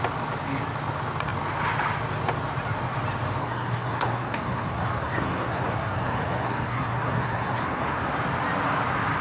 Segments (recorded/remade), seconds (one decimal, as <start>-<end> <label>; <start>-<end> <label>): 0.0-3.4 recorded; 3.4-8.1 remade; 8.1-9.2 recorded